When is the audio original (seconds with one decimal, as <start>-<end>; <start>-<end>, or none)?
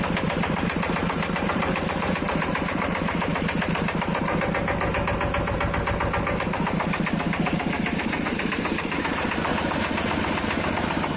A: 3.3-8.4